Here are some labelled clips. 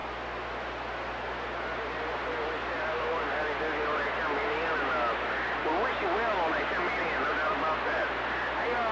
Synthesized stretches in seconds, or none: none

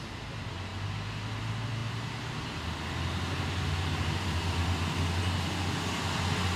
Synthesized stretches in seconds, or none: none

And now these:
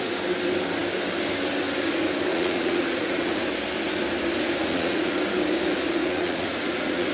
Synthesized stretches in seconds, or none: 2.3-3.4 (vocoder, Vocos); 4.6-5.2; 6.0-7.1

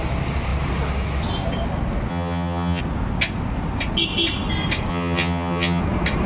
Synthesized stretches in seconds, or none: 2.1-2.8 (vocoder, HiFi-GAN); 4.9-5.8